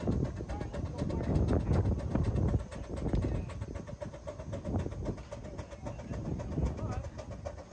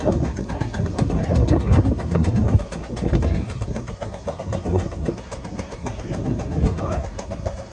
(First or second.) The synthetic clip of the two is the second